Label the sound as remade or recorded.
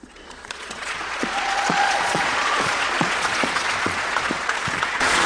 remade